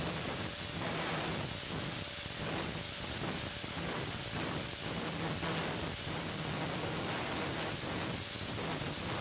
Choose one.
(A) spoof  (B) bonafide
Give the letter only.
B